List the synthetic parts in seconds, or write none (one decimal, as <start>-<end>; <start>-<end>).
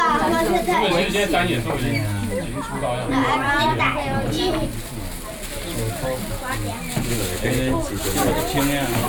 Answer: none